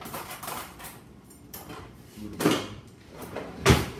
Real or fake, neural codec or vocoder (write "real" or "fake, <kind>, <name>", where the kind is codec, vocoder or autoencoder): fake, vocoder, BigVGAN v2